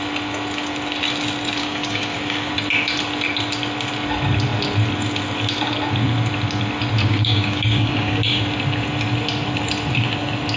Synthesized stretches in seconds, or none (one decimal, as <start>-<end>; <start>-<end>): 1.6-2.5; 7.0-8.4